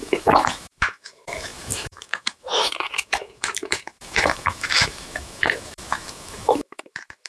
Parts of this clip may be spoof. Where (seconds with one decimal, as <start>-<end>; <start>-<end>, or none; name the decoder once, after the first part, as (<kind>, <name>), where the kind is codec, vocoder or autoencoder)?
0.0-7.3 (autoencoder, DAC-VAE)